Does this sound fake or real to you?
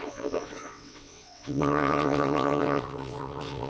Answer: fake